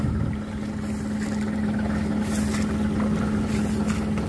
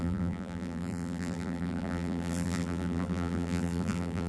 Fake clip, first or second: second